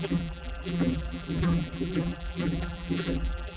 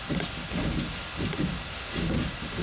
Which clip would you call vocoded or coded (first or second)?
first